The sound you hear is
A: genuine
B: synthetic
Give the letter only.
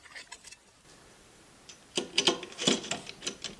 A